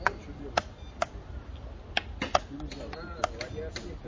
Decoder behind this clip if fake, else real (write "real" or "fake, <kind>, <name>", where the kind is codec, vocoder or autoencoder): real